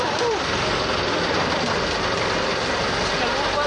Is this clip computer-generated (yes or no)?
no